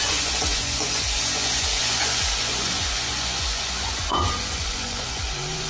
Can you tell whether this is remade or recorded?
remade